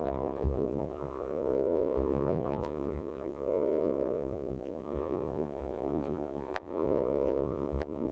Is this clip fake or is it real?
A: fake